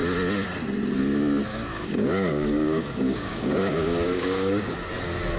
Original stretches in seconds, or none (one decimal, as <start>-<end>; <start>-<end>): 0.0-1.5; 4.7-5.4